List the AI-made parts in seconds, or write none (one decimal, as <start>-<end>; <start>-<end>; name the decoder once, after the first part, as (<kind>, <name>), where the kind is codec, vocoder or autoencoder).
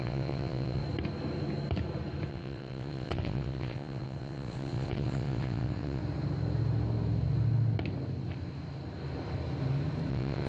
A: 0.0-0.8 (vocoder, WaveNeXt); 2.3-6.0; 10.1-10.5